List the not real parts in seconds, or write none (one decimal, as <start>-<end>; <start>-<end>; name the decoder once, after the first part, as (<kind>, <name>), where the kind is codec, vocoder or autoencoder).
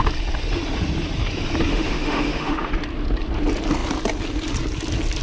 1.7-2.7 (autoencoder, DAC-VAE)